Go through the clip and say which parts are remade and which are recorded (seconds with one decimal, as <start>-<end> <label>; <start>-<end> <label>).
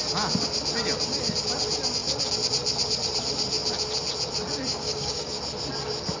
0.0-4.7 recorded; 4.7-5.4 remade; 5.4-6.2 recorded